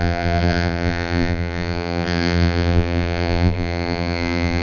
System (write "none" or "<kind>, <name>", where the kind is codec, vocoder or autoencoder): vocoder, BigVGAN v2